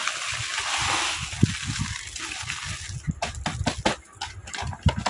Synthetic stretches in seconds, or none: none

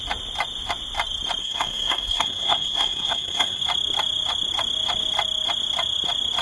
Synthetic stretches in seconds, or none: 1.4-3.6

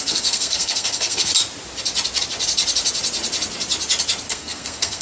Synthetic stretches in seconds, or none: 0.0-1.3; 4.3-5.0